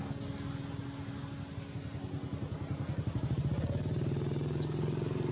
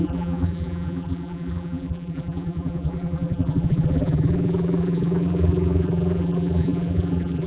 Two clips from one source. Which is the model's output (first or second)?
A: second